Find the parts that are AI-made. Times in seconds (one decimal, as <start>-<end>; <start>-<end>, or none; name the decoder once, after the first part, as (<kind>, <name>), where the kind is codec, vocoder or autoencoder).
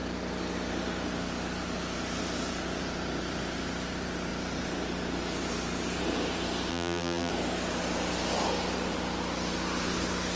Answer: 6.7-7.3 (vocoder, BigVGAN v2)